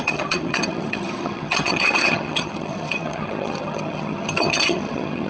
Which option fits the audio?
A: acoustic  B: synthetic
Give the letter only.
B